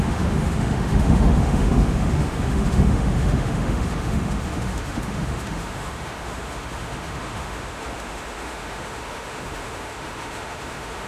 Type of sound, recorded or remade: remade